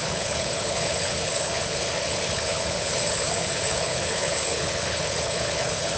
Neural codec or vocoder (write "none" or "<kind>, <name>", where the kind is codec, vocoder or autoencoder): codec, HILCodec